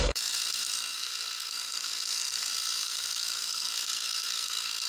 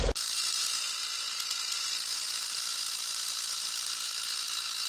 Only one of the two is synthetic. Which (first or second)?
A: first